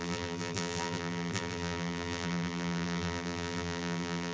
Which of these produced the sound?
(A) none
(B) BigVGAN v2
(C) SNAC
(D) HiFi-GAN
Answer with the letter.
B